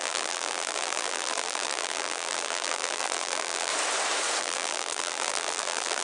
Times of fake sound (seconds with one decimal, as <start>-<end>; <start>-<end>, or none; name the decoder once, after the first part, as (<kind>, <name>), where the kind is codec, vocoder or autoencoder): 0.0-3.7 (vocoder, BigVGAN v2); 4.4-6.0